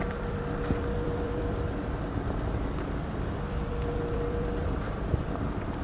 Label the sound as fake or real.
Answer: fake